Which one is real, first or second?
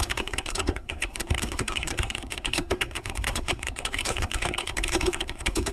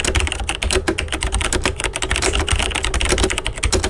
second